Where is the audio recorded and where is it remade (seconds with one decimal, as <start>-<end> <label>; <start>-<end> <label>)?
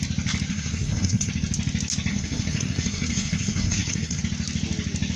0.0-0.5 recorded; 0.5-1.3 remade; 1.3-2.1 recorded; 2.1-4.2 remade; 4.2-5.2 recorded